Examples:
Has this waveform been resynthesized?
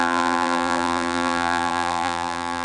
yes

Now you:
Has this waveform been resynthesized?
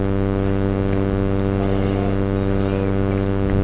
no